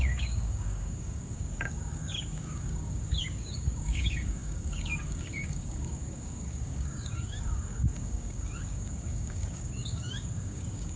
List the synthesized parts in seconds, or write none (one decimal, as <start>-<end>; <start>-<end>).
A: 0.0-11.0